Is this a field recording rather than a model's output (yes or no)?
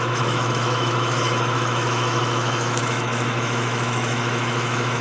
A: no